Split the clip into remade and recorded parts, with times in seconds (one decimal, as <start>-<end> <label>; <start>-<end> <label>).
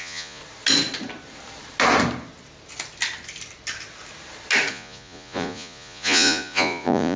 0.0-0.4 remade; 0.4-4.7 recorded; 4.7-7.2 remade